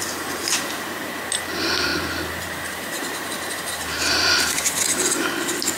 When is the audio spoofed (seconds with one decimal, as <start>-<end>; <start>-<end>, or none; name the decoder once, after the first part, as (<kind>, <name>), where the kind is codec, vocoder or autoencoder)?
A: 0.4-1.1 (vocoder, BigVGAN v2); 1.9-4.8